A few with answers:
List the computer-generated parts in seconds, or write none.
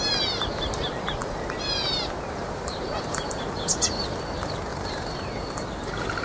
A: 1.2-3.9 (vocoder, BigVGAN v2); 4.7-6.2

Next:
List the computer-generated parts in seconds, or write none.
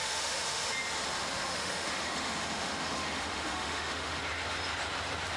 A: 0.0-0.7 (autoencoder, DAC-VAE); 1.5-4.2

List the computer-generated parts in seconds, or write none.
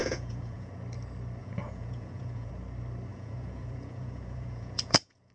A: 0.0-0.7 (vocoder, Vocos); 1.4-2.5; 3.1-5.3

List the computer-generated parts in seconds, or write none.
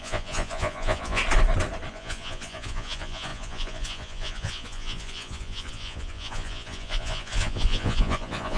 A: 0.0-1.2 (vocoder, Vocos); 1.9-8.6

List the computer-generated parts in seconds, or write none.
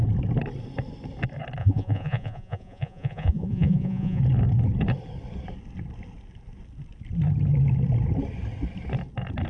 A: 1.6-4.2 (vocoder, Vocos)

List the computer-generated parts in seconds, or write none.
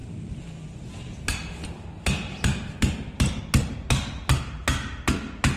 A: none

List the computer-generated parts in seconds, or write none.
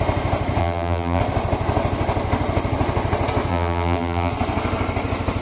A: 0.6-1.2 (vocoder, BigVGAN v2); 3.5-4.3